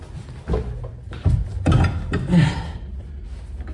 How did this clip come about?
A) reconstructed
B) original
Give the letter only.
B